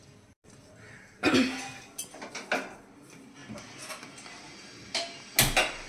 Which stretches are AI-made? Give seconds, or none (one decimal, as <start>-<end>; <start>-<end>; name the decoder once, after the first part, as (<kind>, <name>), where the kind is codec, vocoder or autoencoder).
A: none